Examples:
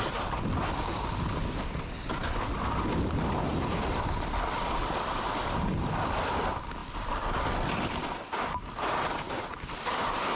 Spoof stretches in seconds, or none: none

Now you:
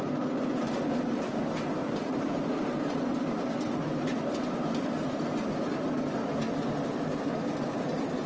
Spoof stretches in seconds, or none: 1.8-2.8 (vocoder, BigVGAN v2)

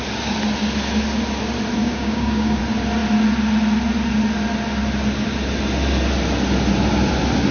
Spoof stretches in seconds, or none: 1.8-2.6 (codec, DAC)

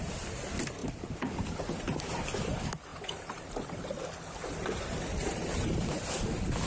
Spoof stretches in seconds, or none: 2.9-4.0 (vocoder, BigVGAN v2); 5.2-6.0